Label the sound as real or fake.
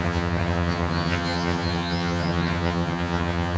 fake